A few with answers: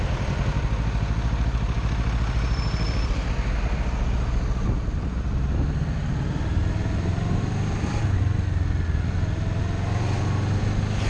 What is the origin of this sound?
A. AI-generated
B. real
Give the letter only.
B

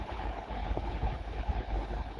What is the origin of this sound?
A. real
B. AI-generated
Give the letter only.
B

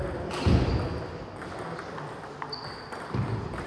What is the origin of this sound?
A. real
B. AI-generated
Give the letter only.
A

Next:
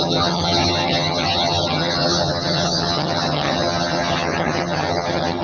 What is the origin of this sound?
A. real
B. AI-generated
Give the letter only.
B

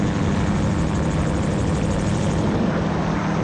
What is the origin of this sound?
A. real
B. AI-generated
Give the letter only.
A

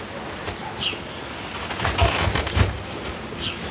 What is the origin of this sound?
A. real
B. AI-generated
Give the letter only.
A